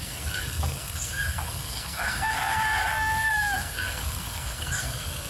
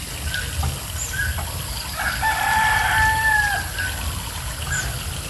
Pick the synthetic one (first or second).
first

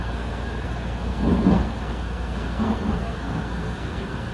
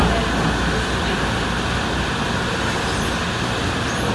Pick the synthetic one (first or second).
first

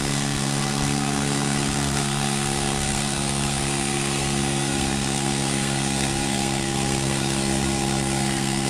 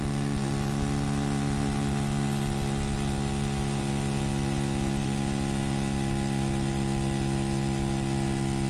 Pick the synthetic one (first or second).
first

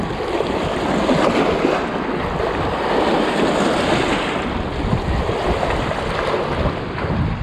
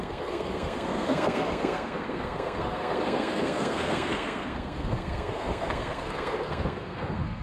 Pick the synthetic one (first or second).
second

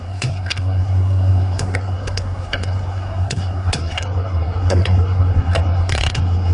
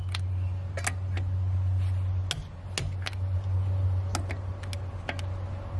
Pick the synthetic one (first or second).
first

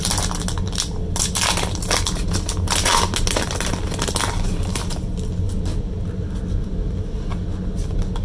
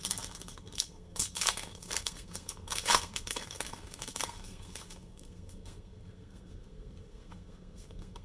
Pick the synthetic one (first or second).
second